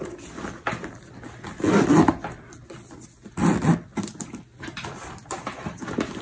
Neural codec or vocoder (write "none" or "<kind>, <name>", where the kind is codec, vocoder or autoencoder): none